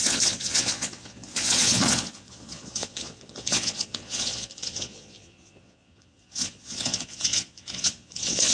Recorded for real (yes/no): no